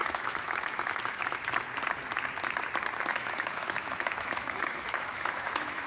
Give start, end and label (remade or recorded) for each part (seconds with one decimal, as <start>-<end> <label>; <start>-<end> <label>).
0.0-1.4 remade; 1.4-3.1 recorded; 3.1-5.9 remade